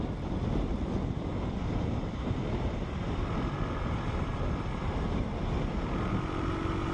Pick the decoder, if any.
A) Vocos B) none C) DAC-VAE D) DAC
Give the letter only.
B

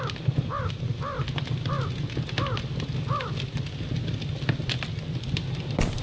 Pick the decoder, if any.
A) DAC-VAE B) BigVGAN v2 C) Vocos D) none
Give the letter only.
D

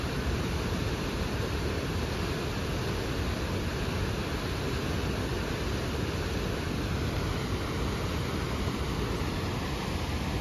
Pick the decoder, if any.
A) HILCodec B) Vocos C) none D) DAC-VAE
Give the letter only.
C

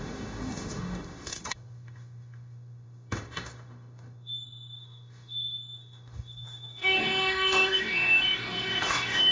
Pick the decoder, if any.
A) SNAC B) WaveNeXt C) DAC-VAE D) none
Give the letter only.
C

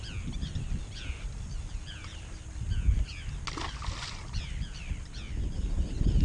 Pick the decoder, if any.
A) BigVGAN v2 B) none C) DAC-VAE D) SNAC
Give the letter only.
B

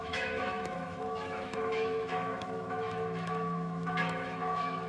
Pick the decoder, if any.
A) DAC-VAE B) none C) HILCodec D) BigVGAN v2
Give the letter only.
A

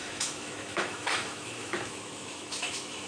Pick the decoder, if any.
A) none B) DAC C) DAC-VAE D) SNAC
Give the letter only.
C